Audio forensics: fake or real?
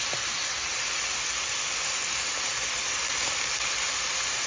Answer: real